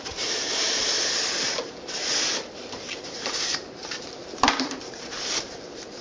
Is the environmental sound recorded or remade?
remade